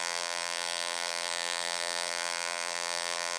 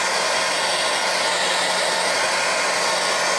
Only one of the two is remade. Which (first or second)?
first